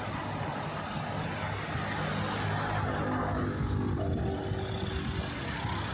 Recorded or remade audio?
recorded